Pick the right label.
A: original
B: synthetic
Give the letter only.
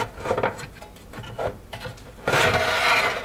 A